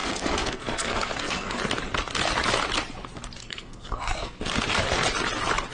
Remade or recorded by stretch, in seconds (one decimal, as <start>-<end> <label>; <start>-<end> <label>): 0.0-1.6 remade; 1.6-3.4 recorded; 3.4-4.4 remade; 4.4-5.7 recorded